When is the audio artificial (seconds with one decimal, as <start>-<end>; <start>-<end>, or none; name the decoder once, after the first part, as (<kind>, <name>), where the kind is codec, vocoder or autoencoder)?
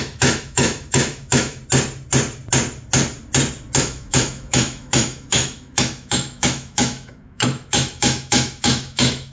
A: 0.0-1.6 (autoencoder, DAC-VAE); 3.8-9.3